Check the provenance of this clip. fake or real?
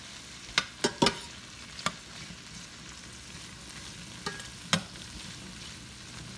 real